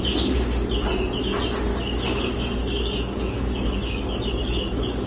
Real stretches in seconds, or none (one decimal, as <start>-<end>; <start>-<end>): 0.0-1.7